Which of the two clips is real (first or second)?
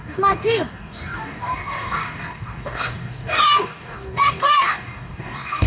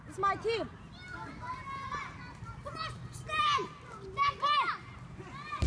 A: second